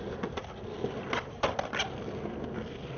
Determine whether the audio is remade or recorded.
recorded